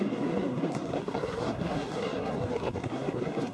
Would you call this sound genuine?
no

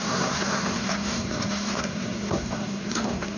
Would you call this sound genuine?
no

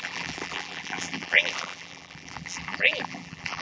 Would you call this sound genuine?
no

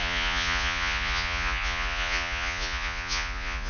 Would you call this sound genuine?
no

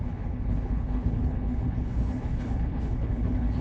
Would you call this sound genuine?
no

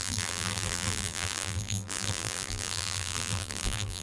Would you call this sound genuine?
no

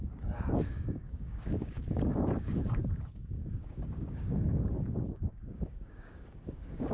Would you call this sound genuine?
no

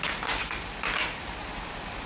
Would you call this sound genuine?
yes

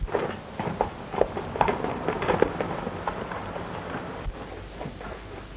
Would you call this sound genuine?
yes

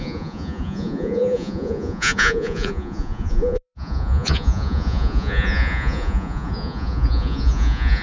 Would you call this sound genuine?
no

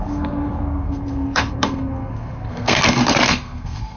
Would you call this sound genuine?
no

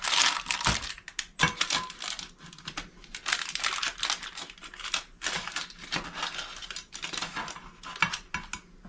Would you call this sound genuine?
yes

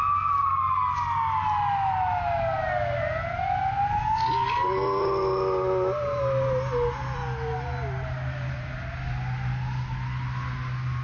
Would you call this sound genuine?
yes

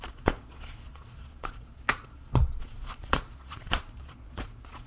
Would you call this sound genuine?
no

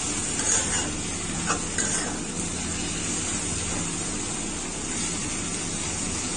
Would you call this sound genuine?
yes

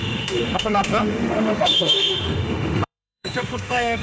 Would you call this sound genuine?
no